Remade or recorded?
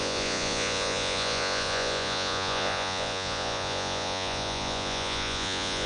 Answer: remade